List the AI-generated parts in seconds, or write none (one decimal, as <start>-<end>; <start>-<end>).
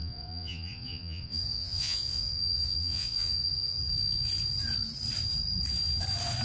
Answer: 0.0-3.8